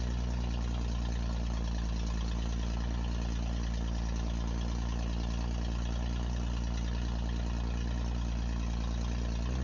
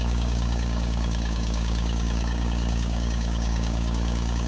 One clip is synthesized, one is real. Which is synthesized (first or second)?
second